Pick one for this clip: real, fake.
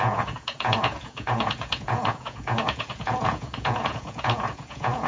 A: fake